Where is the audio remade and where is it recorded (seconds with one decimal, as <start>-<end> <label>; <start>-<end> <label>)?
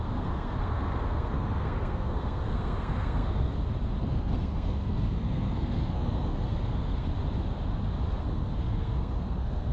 0.0-3.5 remade; 3.5-4.0 recorded; 4.0-7.1 remade; 7.1-8.2 recorded; 8.2-9.7 remade